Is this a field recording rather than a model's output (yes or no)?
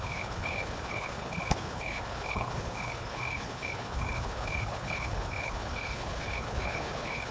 no